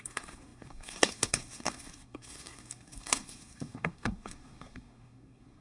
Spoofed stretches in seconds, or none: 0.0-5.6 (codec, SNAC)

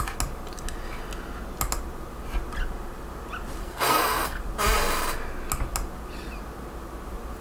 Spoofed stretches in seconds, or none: 3.6-4.4 (codec, SNAC)